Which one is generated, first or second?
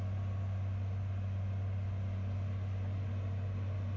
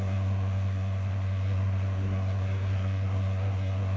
second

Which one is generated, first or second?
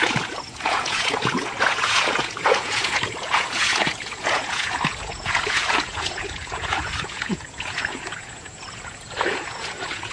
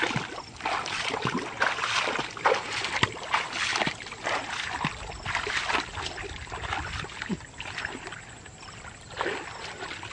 first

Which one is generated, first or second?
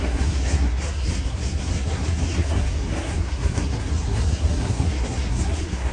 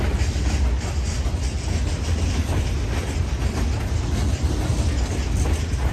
first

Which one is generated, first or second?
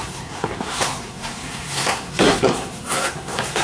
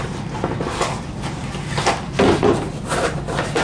first